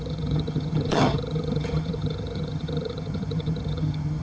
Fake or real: fake